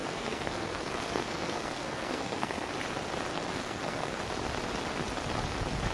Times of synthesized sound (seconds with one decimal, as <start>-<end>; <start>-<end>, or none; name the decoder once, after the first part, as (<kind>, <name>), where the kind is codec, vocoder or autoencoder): 0.0-2.7 (codec, SNAC); 3.3-4.2